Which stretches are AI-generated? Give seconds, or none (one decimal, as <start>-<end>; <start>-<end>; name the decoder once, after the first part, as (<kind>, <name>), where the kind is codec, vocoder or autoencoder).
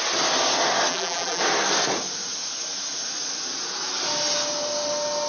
0.9-1.4 (vocoder, BigVGAN v2)